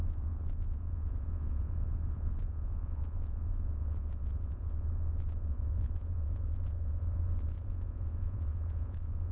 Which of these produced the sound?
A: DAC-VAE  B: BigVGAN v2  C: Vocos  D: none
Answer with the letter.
C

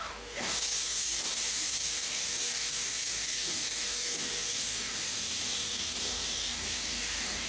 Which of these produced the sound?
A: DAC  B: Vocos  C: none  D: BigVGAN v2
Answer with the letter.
A